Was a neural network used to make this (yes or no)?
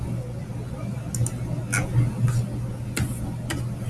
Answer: no